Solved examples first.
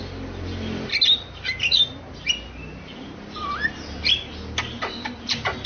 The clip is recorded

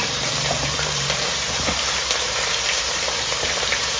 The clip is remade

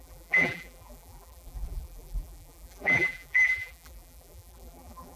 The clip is remade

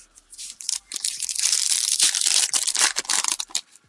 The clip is remade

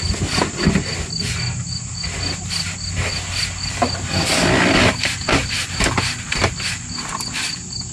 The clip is recorded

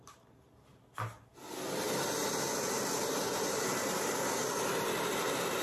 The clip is recorded